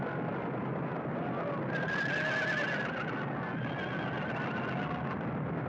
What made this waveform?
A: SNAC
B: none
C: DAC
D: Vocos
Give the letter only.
B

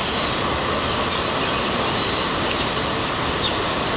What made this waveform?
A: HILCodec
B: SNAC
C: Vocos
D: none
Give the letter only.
D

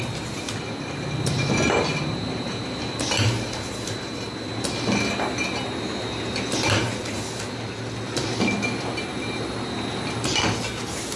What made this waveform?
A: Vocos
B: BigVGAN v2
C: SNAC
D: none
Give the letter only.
D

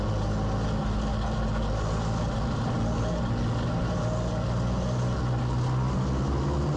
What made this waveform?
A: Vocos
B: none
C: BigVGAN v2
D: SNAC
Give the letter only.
B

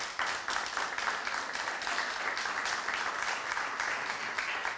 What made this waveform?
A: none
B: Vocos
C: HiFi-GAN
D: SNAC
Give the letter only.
A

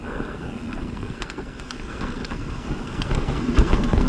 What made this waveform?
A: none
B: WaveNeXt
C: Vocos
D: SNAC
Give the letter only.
D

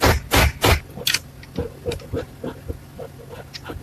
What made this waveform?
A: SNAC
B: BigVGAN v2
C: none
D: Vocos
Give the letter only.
C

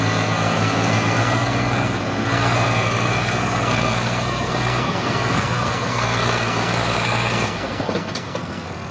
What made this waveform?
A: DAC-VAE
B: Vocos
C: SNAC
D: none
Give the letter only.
C